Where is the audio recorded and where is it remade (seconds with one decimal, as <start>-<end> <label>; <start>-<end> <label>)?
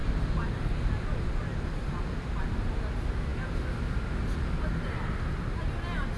0.0-6.2 recorded